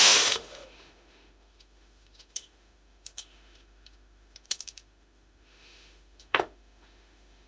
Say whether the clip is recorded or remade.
remade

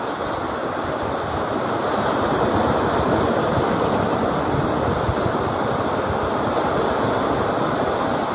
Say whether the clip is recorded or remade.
recorded